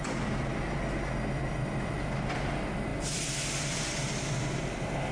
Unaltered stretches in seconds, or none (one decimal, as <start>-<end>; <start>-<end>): 0.5-1.3